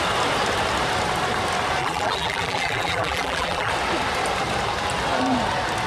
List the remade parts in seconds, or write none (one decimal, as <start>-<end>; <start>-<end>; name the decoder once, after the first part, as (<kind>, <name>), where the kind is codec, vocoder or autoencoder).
1.8-3.7 (vocoder, BigVGAN v2)